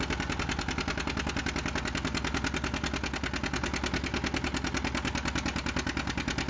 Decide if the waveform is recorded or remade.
recorded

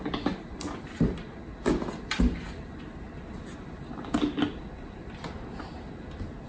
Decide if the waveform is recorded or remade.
recorded